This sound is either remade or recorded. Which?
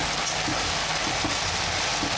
recorded